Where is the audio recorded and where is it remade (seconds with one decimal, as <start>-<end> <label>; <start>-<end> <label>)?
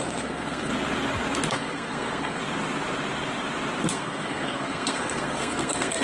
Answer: 0.0-0.7 remade; 0.7-1.5 recorded; 1.5-2.4 remade; 2.4-3.9 recorded; 3.9-6.0 remade